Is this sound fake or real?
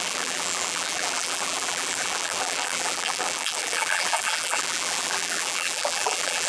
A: fake